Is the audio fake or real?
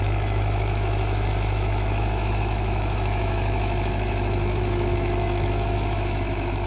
fake